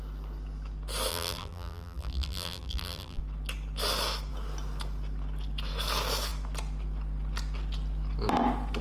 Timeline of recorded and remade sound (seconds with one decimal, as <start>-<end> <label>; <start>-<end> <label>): 0.0-1.1 recorded; 1.1-3.2 remade; 3.2-8.8 recorded